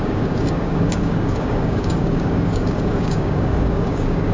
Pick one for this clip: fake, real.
fake